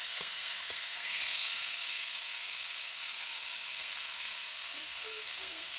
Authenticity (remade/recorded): remade